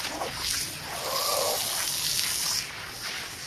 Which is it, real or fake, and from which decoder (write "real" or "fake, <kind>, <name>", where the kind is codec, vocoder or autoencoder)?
real